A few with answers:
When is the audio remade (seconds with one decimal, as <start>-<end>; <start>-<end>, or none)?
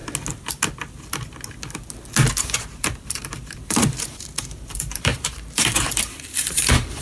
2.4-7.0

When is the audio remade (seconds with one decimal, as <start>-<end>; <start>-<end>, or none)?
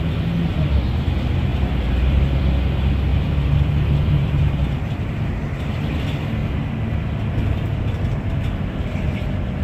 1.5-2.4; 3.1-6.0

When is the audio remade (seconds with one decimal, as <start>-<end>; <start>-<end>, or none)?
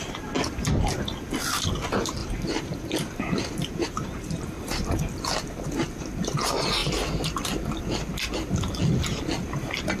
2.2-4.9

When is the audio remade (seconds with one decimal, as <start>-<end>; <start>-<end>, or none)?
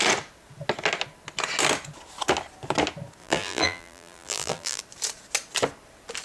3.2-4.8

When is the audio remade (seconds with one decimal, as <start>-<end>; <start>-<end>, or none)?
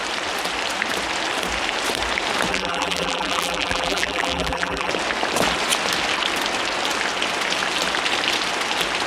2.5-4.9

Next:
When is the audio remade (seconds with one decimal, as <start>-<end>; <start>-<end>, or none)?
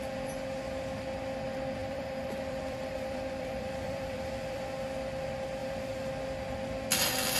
1.8-4.6; 5.6-6.1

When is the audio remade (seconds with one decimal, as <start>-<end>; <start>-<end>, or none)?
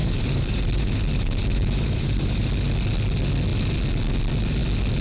0.0-2.5